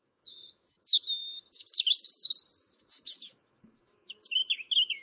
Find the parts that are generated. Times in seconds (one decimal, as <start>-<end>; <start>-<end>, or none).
0.0-2.2; 2.8-5.0